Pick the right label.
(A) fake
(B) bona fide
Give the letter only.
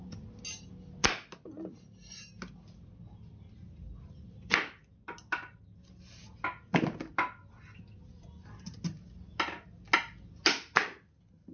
B